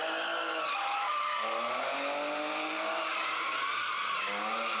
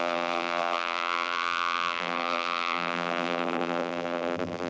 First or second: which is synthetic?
second